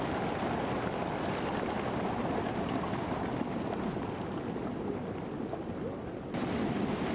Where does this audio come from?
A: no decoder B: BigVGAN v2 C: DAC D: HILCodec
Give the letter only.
A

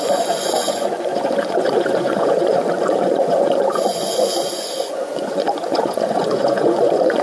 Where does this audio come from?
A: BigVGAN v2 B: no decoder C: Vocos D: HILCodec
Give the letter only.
C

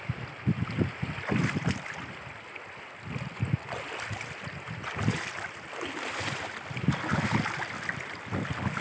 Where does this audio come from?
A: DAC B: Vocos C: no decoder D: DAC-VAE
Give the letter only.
C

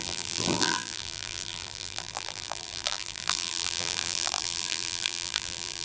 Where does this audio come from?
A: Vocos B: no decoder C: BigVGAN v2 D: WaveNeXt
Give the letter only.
C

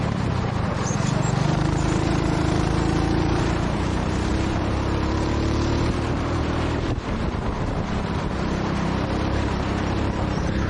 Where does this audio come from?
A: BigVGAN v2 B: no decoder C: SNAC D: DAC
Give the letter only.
A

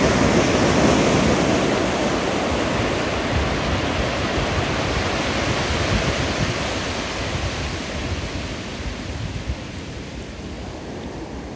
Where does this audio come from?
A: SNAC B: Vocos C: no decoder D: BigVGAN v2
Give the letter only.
C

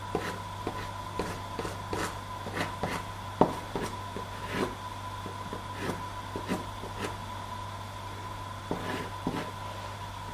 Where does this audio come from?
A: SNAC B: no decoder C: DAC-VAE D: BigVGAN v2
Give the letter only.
B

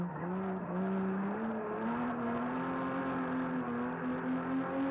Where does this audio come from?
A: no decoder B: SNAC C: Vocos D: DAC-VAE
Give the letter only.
A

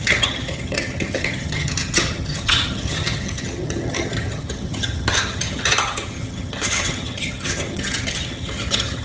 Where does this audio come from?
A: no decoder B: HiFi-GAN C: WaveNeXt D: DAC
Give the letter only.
B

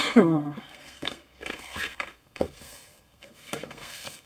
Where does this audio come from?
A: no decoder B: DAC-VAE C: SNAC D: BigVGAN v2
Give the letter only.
C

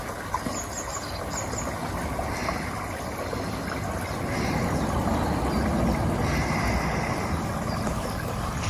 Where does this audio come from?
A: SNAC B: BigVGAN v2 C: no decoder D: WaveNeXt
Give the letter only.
C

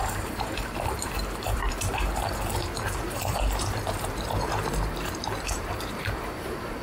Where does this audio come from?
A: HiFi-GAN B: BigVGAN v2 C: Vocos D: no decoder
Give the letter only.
B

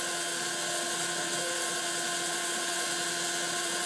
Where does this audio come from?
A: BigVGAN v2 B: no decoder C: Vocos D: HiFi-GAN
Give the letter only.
C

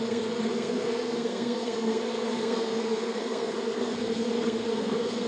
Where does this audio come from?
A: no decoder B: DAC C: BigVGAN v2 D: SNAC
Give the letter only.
D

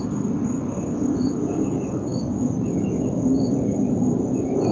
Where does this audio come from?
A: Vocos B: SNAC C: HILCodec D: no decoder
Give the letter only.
D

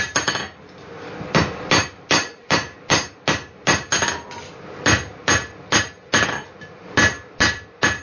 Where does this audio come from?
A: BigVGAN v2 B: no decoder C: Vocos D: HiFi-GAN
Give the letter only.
B